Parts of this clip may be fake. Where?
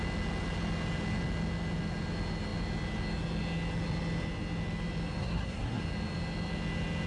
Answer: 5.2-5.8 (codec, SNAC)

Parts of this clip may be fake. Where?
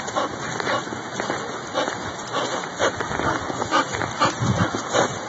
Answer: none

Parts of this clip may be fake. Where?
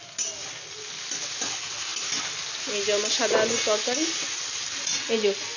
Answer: none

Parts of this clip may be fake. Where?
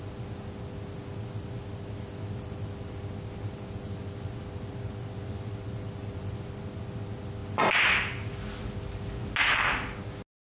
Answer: none